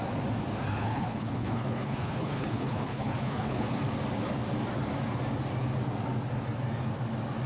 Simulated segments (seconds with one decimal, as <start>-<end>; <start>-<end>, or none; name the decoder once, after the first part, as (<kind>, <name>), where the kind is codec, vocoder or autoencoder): 0.7-3.7 (codec, HILCodec)